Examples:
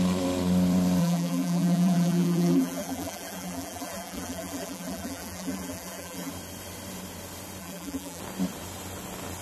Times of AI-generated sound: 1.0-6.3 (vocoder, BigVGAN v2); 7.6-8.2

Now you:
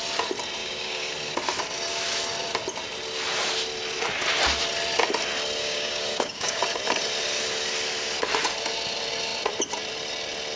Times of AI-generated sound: 0.6-1.1 (codec, DAC); 5.6-6.6